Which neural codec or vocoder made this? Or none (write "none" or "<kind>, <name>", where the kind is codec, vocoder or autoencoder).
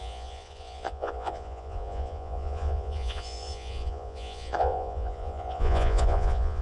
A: vocoder, Vocos